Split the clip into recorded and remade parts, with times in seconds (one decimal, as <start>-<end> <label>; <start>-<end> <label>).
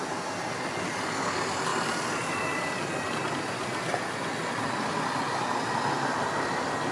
0.0-6.9 recorded